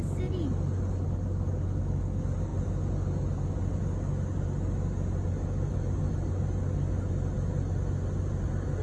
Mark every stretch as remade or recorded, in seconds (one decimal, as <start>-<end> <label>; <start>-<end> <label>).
0.0-8.8 recorded